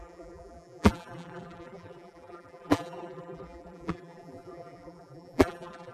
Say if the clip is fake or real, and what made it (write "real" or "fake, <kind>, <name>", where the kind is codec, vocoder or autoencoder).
fake, vocoder, BigVGAN v2